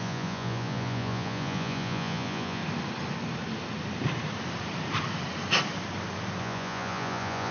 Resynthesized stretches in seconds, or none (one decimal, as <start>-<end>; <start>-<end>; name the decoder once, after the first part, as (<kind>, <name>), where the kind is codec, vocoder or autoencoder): 0.0-2.6 (vocoder, Vocos); 6.4-7.5